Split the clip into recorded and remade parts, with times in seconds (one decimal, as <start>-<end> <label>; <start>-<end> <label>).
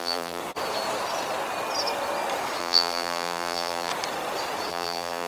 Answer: 0.0-0.4 remade; 0.4-2.6 recorded; 2.6-3.9 remade; 3.9-4.7 recorded; 4.7-5.3 remade